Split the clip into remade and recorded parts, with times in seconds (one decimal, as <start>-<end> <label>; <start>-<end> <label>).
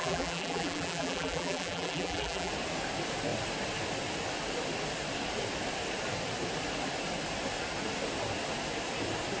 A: 0.0-2.5 remade; 2.5-9.4 recorded